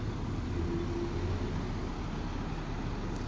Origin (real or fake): real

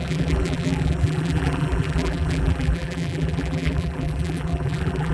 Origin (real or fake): fake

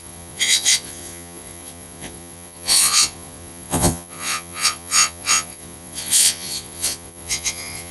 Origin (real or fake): fake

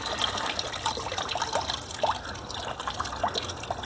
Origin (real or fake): real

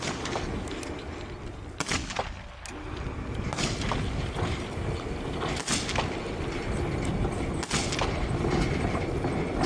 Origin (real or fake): real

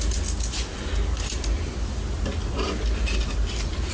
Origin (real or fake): real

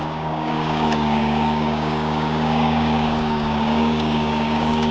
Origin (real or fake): fake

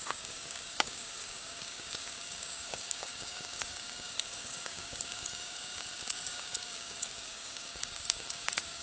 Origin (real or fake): fake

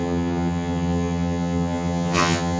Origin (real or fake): fake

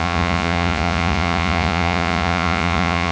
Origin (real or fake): fake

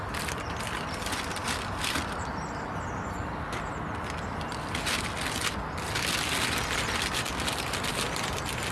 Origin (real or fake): real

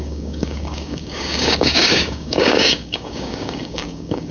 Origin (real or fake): fake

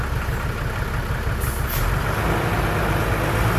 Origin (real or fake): real